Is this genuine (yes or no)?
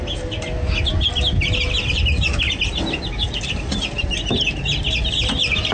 yes